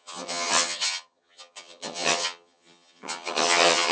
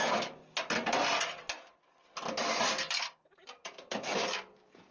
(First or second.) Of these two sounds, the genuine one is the second